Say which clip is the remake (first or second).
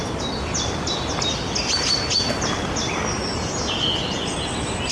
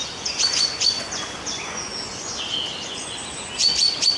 second